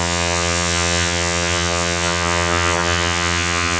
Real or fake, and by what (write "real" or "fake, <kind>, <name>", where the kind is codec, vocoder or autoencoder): fake, vocoder, HiFi-GAN